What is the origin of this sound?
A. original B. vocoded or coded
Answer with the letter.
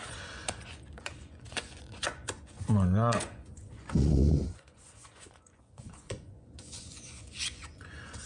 B